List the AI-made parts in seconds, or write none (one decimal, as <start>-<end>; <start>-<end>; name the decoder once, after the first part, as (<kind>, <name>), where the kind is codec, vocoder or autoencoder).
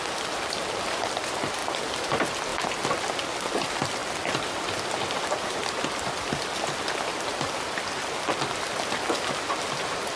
0.0-2.5 (vocoder, BigVGAN v2); 3.4-10.2